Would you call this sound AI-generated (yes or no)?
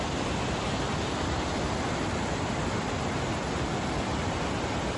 no